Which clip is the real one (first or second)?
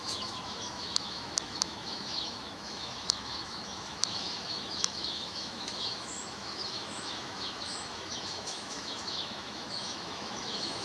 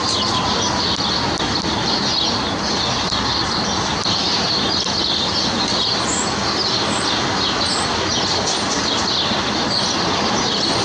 second